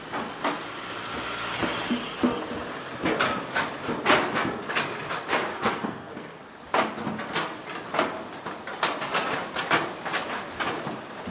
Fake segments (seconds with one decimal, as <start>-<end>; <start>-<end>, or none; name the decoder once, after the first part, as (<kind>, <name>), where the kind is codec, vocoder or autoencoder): 5.5-6.5 (codec, SNAC)

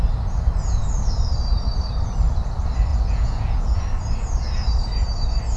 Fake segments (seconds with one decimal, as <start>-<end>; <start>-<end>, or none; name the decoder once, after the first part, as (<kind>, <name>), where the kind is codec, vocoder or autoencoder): 2.9-3.8 (vocoder, Vocos)

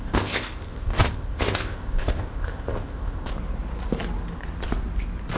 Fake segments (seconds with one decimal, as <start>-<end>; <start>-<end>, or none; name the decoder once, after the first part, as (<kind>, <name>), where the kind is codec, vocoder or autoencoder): 0.0-3.3 (codec, ZipCodec)

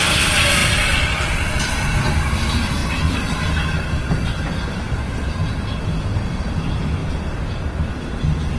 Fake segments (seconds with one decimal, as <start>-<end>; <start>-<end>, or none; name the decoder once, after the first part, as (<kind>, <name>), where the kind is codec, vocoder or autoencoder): 0.0-2.8 (vocoder, BigVGAN v2); 4.7-5.4; 6.3-8.6

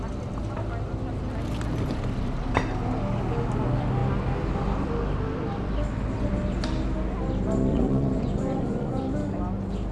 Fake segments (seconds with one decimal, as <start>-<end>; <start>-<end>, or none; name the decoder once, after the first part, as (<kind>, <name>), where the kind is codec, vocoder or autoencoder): 7.7-9.0 (vocoder, Vocos)